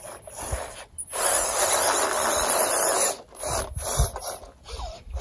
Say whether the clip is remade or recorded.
recorded